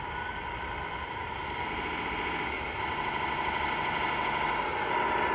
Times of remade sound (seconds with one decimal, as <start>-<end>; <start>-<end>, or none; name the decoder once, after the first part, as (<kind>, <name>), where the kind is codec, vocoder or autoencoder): none